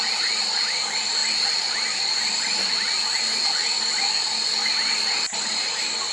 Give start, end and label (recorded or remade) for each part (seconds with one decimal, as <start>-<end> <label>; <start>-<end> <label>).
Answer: 0.0-6.1 recorded